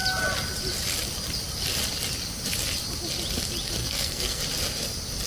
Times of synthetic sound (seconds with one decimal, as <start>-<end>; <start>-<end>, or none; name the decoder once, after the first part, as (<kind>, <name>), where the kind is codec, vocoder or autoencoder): 3.8-4.4 (codec, SNAC)